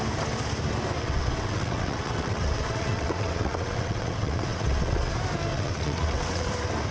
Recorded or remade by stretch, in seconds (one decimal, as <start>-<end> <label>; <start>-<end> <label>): 0.0-1.0 recorded; 1.0-5.1 remade; 5.1-5.5 recorded; 5.5-6.5 remade; 6.5-6.9 recorded